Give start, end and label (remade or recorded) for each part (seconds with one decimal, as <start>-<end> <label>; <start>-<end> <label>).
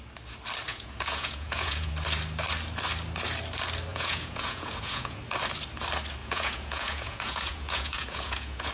0.0-0.7 recorded; 0.7-1.9 remade; 1.9-3.9 recorded; 3.9-5.2 remade; 5.2-6.2 recorded; 6.2-8.7 remade